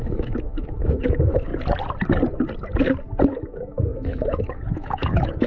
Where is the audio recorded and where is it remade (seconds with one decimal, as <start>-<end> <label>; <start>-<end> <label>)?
0.0-1.5 remade; 1.5-3.2 recorded; 3.2-5.5 remade